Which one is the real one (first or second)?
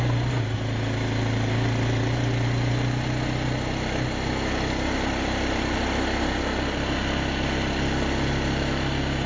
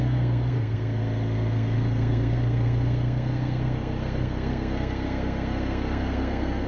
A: first